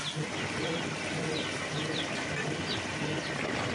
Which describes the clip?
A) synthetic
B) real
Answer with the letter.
B